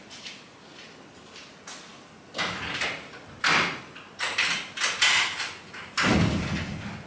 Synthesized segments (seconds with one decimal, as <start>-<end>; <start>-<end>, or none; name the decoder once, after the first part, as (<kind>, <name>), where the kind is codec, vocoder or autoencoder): none